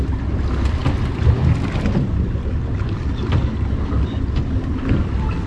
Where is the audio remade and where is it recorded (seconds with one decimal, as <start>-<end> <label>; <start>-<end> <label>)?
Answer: 0.0-5.5 recorded